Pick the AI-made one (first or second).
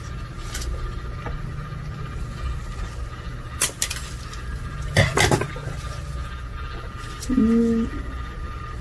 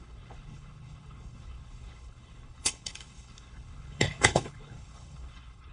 second